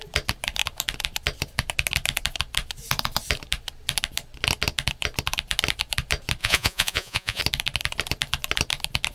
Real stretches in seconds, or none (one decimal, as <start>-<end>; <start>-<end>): 0.0-6.4; 7.4-9.1